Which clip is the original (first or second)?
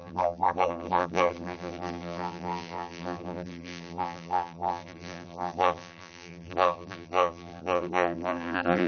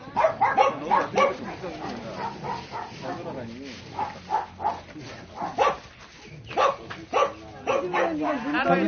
second